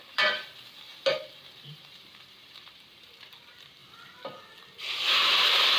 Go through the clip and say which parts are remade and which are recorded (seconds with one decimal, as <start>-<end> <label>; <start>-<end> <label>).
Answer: 0.0-3.8 remade; 3.8-5.1 recorded; 5.1-5.8 remade